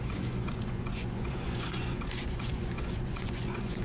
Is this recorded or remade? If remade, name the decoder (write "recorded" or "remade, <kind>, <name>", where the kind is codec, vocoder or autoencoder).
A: remade, vocoder, Vocos